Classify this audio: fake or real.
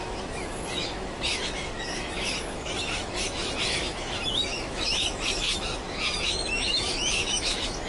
fake